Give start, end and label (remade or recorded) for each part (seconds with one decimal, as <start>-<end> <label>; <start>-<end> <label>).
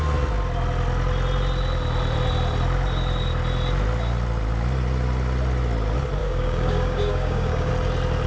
0.0-6.2 recorded; 6.2-7.7 remade; 7.7-8.3 recorded